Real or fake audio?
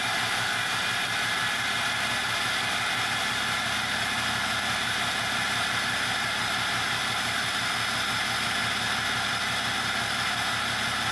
real